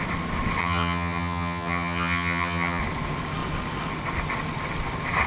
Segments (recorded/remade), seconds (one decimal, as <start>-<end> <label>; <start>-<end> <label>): 0.0-0.6 recorded; 0.6-2.8 remade; 2.8-5.3 recorded